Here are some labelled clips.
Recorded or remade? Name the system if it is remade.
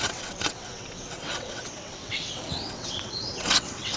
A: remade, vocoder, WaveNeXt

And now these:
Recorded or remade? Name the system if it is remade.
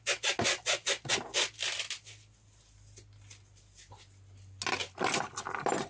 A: recorded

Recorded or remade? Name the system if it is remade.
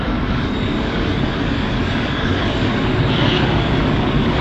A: remade, codec, DAC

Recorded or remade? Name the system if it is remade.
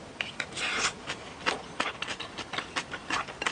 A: recorded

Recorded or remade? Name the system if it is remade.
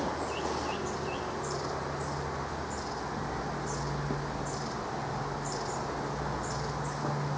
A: recorded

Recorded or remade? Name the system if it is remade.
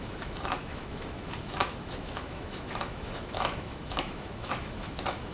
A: remade, autoencoder, DAC-VAE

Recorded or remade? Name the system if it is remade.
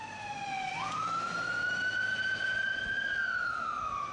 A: recorded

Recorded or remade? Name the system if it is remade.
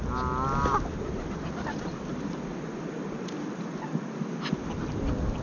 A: recorded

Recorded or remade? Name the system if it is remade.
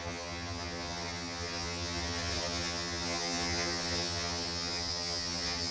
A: remade, vocoder, HiFi-GAN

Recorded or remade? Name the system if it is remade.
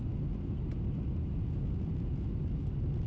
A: recorded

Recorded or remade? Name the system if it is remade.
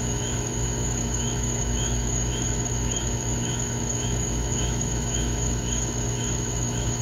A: remade, autoencoder, DAC-VAE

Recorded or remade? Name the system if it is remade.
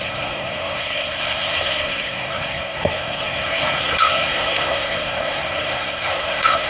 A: remade, codec, SNAC